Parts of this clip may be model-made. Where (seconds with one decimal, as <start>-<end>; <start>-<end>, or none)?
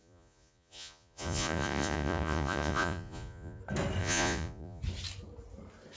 0.0-3.6; 4.0-4.8